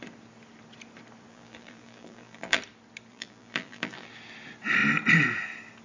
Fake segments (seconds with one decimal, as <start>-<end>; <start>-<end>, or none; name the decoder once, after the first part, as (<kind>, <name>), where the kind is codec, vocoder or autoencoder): 1.3-2.6 (vocoder, BigVGAN v2); 3.1-4.1